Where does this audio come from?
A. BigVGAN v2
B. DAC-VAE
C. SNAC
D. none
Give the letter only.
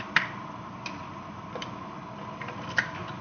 A